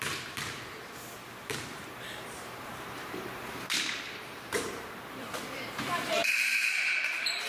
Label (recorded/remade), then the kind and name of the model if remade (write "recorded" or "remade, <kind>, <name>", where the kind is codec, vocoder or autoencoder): remade, vocoder, BigVGAN v2